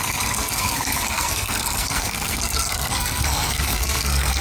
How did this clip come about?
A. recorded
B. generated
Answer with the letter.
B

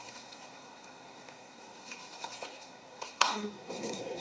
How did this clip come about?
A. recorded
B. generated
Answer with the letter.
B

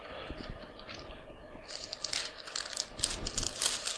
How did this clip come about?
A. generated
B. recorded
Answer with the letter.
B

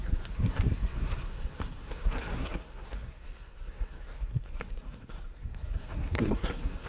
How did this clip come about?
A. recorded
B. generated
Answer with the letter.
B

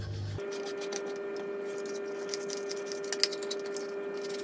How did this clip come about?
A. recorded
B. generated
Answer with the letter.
A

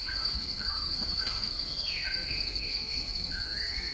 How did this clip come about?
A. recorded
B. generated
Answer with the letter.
B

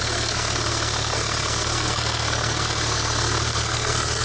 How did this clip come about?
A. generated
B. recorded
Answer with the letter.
A